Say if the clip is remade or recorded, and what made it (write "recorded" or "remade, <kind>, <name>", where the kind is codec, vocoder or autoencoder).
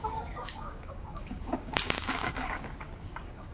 remade, codec, DAC